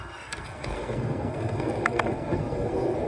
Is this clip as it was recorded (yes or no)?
no